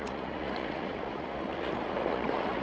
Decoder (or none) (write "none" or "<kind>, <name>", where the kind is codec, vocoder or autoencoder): vocoder, Vocos